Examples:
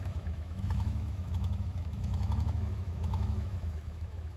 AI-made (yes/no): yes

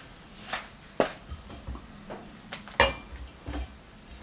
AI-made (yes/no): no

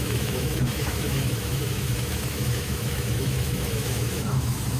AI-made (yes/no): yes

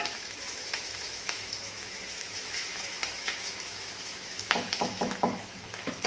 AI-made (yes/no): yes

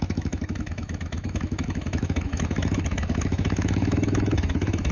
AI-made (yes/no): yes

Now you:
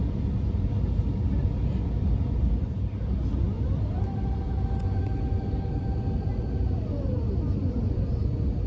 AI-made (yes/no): no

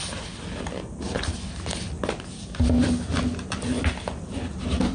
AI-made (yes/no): no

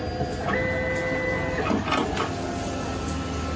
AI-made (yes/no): no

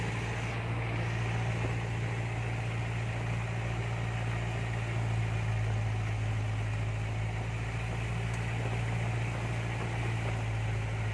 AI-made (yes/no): no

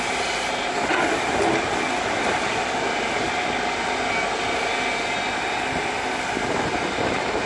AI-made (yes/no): no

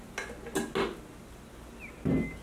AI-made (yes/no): no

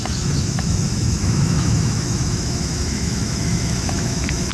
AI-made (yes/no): yes